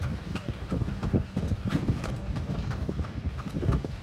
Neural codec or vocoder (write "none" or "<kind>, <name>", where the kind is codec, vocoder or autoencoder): codec, DAC